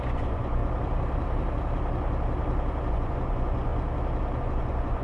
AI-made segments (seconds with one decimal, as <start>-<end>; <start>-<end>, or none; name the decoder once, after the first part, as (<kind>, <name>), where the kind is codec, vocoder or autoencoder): 0.0-0.6 (vocoder, Vocos); 2.9-3.7; 4.4-5.0